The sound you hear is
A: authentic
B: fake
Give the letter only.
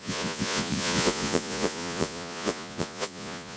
B